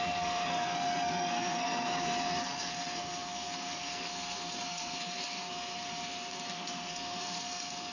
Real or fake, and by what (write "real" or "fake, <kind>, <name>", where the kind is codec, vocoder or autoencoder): fake, codec, SNAC